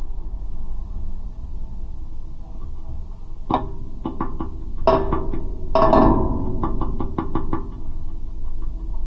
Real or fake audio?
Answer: real